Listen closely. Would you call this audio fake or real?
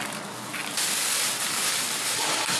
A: real